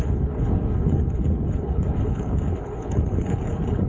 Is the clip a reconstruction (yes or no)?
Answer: yes